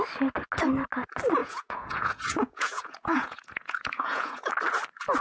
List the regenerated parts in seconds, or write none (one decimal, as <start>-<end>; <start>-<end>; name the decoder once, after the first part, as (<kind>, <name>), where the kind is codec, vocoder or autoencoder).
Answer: 1.4-4.5 (vocoder, Vocos)